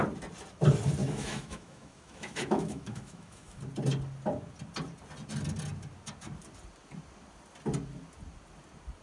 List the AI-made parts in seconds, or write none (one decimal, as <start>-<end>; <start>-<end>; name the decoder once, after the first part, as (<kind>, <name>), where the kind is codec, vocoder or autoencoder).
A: 1.0-3.6 (autoencoder, DAC-VAE)